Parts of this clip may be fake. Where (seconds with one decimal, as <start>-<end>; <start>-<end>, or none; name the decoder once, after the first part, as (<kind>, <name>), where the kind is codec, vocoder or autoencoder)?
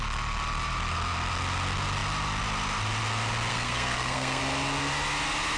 3.5-4.4 (codec, SNAC)